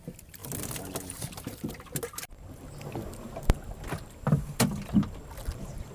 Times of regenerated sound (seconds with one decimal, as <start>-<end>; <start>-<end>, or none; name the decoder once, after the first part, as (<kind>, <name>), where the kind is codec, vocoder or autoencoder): none